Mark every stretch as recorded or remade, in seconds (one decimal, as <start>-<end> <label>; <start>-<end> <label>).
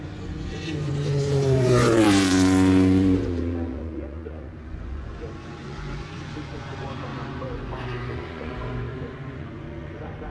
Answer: 0.0-10.3 remade